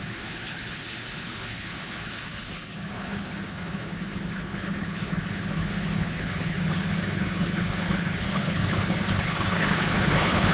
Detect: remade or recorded remade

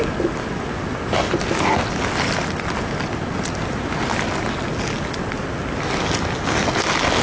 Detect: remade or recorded recorded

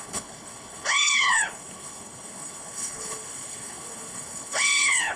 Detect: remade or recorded remade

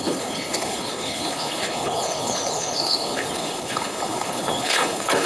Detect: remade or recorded remade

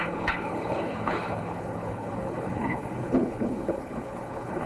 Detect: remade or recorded remade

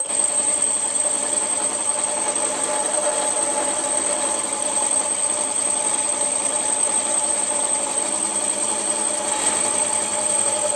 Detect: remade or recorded recorded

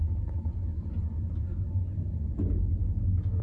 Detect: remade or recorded recorded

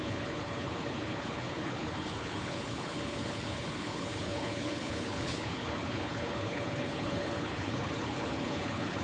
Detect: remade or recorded remade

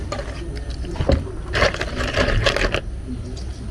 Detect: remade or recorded recorded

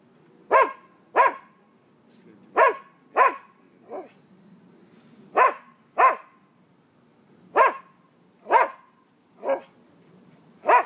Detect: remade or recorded recorded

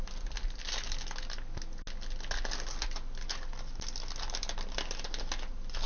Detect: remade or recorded recorded